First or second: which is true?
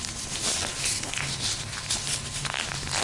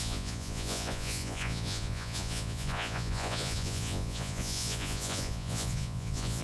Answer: first